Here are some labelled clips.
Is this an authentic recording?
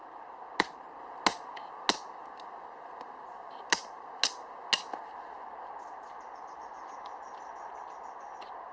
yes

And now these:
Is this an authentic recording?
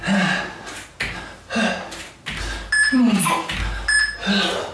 yes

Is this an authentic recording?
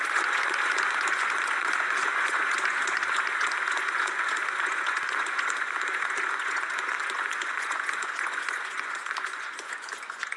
no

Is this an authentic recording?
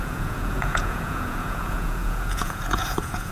no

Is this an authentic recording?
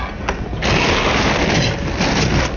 yes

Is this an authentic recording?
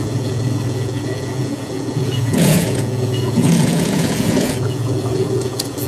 no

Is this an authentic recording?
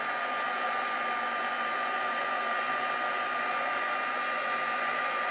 no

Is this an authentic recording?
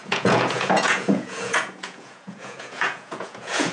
no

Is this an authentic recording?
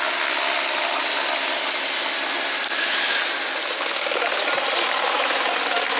yes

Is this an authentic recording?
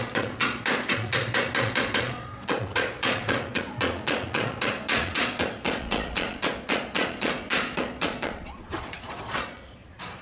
no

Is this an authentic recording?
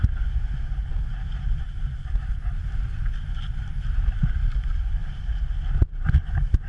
yes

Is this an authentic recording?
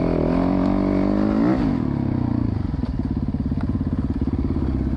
yes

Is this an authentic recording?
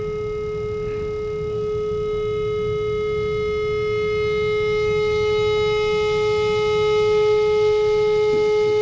yes